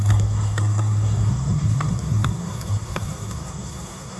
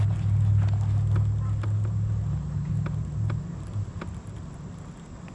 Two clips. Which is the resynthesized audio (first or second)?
first